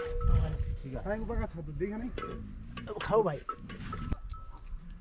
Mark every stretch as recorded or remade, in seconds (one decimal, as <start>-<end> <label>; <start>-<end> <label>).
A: 0.0-5.0 recorded